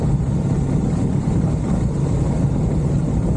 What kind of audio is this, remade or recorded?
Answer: recorded